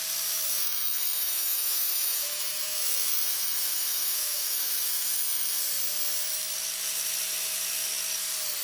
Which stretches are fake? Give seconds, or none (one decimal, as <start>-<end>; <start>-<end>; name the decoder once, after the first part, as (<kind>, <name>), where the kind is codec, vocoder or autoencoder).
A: 0.5-5.6 (autoencoder, DAC-VAE)